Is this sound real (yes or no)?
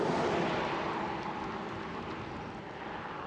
yes